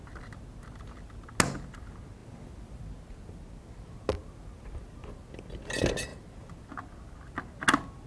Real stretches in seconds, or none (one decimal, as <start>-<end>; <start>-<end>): 0.0-8.1